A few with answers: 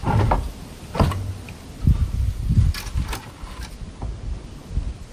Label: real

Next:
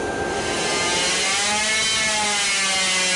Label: real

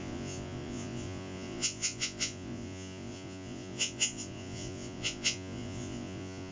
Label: fake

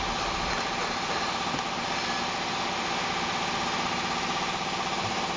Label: real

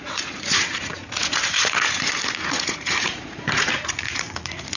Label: fake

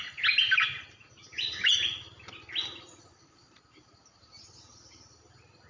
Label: real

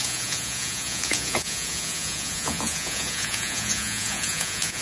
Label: fake